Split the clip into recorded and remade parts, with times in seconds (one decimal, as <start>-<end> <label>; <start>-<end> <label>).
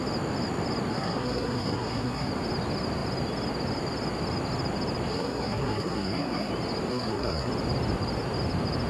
0.0-0.9 recorded; 0.9-2.3 remade; 2.3-5.1 recorded; 5.1-6.5 remade; 6.5-6.9 recorded; 6.9-7.5 remade; 7.5-8.9 recorded